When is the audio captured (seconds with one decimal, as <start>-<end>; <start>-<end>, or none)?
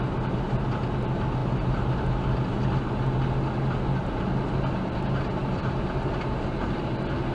0.0-7.3